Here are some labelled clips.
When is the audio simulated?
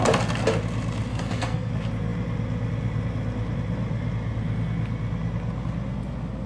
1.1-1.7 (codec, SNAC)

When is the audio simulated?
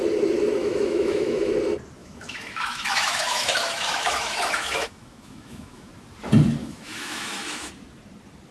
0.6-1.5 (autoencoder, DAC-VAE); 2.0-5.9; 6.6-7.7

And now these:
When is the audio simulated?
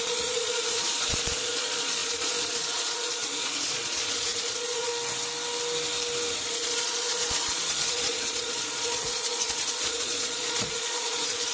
0.0-4.9 (vocoder, Vocos); 6.3-11.5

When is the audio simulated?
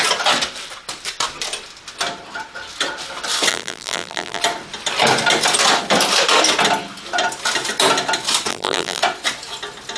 3.5-4.4 (vocoder, BigVGAN v2); 8.5-9.0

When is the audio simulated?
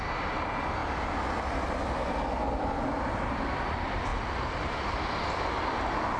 none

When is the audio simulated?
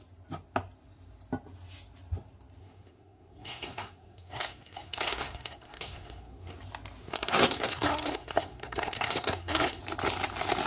2.6-6.6 (codec, SNAC); 7.0-9.8